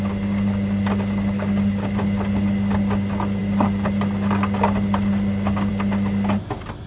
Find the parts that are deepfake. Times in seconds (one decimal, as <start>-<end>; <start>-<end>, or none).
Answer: none